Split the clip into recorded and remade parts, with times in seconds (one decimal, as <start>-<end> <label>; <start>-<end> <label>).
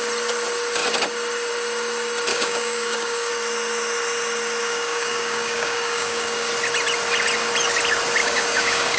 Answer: 0.0-2.3 recorded; 2.3-3.3 remade; 3.3-4.6 recorded; 4.6-6.5 remade; 6.5-8.2 recorded; 8.2-9.0 remade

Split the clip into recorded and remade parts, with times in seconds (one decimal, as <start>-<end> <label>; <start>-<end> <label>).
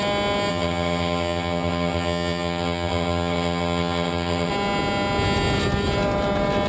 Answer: 0.0-0.5 recorded; 0.5-4.5 remade; 4.5-6.7 recorded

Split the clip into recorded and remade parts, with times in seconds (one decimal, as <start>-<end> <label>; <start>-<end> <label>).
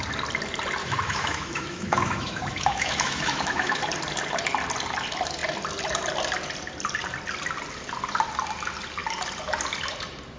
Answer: 0.0-0.8 recorded; 0.8-3.8 remade; 3.8-10.4 recorded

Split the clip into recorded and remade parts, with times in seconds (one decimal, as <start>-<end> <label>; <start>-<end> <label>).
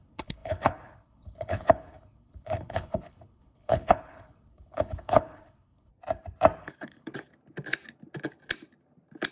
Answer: 0.0-5.9 remade; 5.9-6.6 recorded; 6.6-7.1 remade; 7.1-9.3 recorded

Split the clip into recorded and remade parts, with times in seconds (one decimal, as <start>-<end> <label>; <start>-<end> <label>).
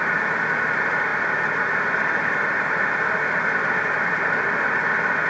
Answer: 0.0-5.3 recorded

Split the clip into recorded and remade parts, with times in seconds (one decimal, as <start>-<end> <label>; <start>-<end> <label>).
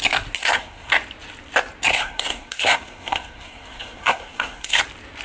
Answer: 0.0-0.4 recorded; 0.4-0.9 remade; 0.9-1.9 recorded; 1.9-4.8 remade; 4.8-5.2 recorded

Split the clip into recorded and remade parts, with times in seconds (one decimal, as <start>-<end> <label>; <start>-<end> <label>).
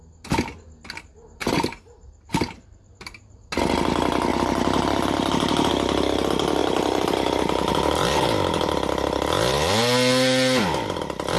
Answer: 0.0-1.4 recorded; 1.4-3.5 remade; 3.5-4.3 recorded; 4.3-5.7 remade; 5.7-6.6 recorded; 6.6-7.7 remade; 7.7-11.4 recorded